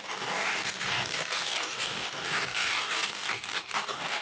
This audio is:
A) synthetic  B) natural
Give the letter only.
A